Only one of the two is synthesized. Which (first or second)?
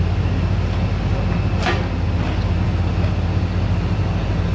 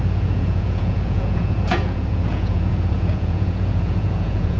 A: second